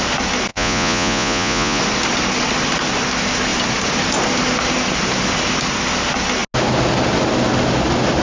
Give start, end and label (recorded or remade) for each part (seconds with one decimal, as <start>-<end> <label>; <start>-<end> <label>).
0.0-0.5 recorded; 0.5-1.8 remade; 1.8-8.2 recorded